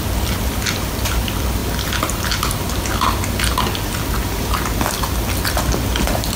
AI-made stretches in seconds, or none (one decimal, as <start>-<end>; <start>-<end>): none